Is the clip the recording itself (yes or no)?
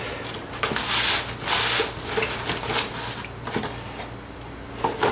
yes